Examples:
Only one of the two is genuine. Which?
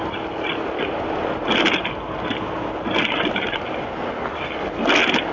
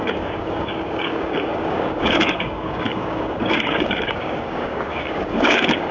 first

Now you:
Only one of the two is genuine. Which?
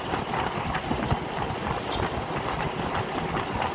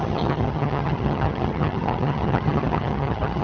first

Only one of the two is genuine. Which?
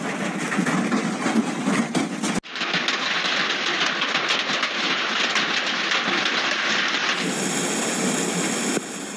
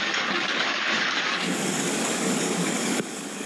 first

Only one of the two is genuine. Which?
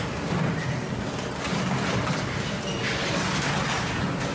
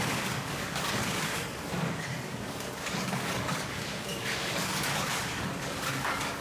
first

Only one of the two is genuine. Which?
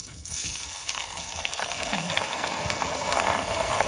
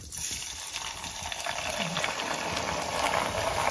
second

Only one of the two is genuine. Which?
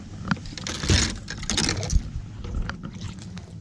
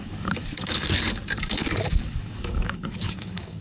first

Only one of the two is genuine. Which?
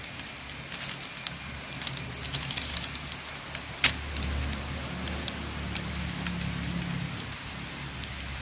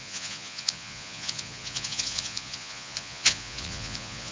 first